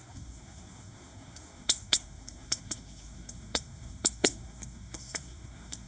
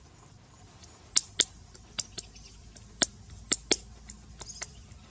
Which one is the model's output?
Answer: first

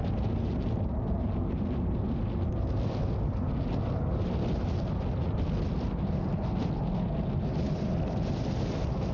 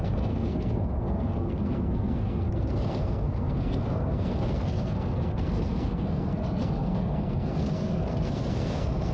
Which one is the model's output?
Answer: second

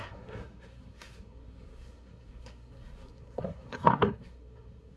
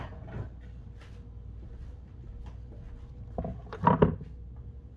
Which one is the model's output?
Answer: first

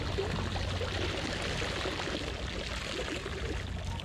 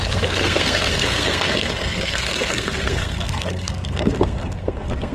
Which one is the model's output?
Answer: second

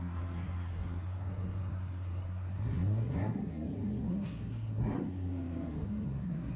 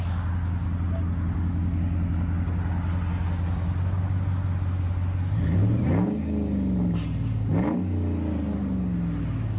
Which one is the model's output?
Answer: first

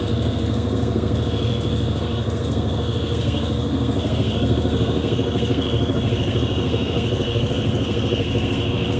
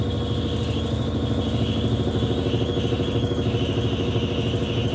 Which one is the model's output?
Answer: first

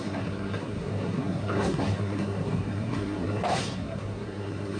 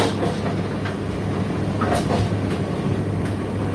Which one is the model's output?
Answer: first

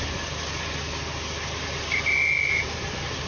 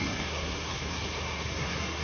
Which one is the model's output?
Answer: second